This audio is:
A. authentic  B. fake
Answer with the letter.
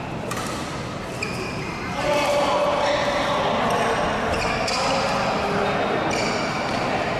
A